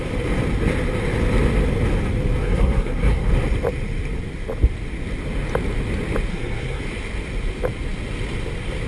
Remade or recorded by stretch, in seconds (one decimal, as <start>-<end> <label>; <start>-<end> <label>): 0.0-2.4 recorded; 2.4-3.3 remade; 3.3-6.3 recorded; 6.3-6.8 remade; 6.8-8.9 recorded